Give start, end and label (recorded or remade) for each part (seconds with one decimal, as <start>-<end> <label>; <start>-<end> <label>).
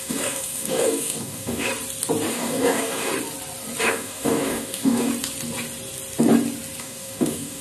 0.0-1.7 remade; 1.7-2.3 recorded; 2.3-3.1 remade; 3.1-3.8 recorded; 3.8-5.1 remade; 5.1-6.8 recorded; 6.8-7.6 remade